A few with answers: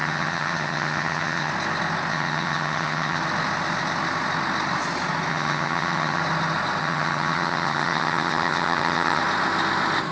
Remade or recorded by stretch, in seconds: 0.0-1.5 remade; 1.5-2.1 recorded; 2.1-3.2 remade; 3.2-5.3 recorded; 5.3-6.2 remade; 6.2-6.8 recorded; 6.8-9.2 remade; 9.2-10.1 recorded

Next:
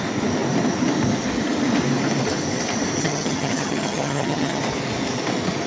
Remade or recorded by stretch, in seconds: 0.0-3.0 recorded; 3.0-4.6 remade; 4.6-5.7 recorded